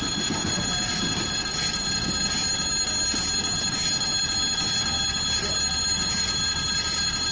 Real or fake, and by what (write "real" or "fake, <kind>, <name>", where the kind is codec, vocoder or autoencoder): real